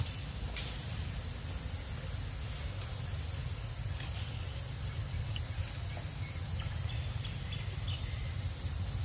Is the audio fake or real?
real